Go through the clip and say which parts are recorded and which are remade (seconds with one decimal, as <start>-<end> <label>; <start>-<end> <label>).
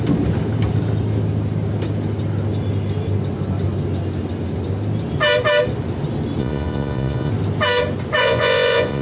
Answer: 0.0-6.4 recorded; 6.4-7.3 remade; 7.3-8.2 recorded; 8.2-9.0 remade